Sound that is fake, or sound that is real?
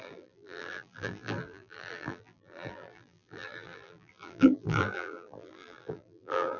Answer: fake